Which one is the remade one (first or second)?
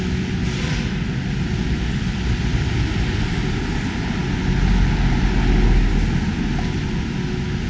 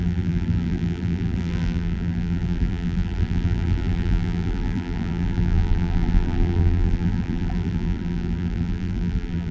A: second